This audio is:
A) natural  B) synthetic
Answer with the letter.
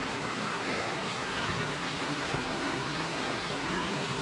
B